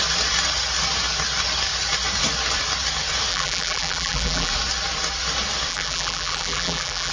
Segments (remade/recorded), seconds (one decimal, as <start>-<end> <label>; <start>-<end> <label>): 0.0-3.3 recorded; 3.3-4.5 remade; 4.5-5.7 recorded; 5.7-7.1 remade